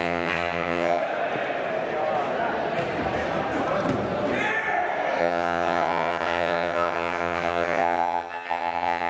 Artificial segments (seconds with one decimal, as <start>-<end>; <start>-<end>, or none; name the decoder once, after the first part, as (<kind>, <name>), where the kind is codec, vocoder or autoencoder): 0.0-1.0 (vocoder, HiFi-GAN); 5.2-9.1